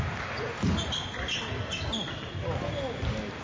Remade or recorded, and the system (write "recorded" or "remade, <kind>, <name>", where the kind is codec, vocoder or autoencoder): recorded